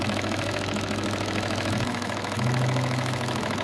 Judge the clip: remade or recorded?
remade